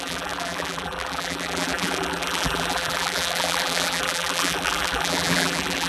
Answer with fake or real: fake